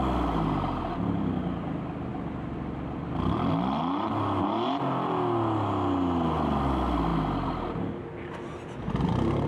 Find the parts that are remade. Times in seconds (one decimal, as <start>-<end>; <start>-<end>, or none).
none